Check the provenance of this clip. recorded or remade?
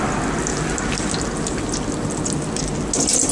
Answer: recorded